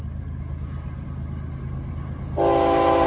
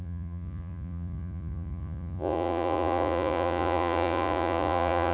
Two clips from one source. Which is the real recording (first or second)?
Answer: first